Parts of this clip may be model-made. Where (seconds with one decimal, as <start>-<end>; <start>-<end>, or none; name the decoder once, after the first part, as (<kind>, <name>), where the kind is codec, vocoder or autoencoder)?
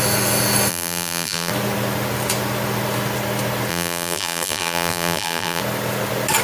0.7-1.5 (vocoder, BigVGAN v2); 3.7-5.6